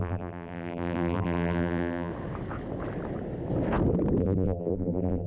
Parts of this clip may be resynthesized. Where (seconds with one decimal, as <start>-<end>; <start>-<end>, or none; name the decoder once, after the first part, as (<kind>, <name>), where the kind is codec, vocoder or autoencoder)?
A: 0.0-2.1 (vocoder, BigVGAN v2); 4.2-5.3